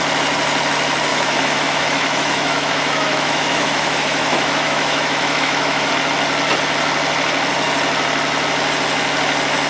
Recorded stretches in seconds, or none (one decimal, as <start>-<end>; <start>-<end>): 0.0-1.1; 5.9-9.7